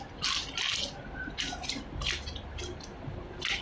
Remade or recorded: recorded